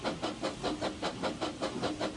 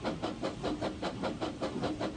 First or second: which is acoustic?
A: first